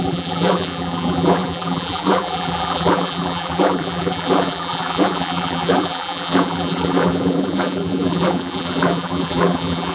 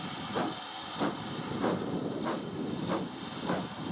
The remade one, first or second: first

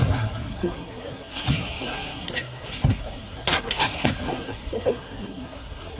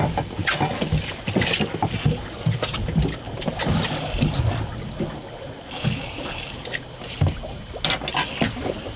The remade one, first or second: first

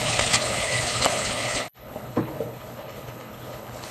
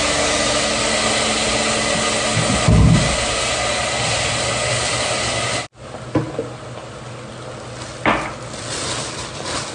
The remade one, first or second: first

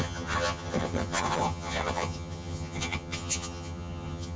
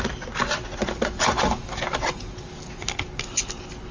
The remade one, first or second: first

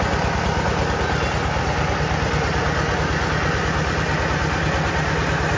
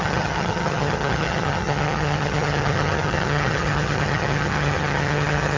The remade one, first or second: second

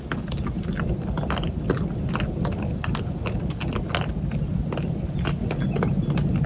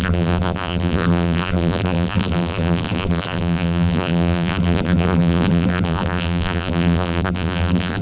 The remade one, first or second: second